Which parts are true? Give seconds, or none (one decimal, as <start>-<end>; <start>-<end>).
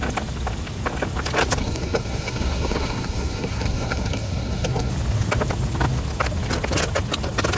0.0-1.6; 4.9-7.6